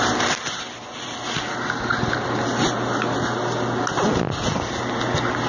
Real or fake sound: real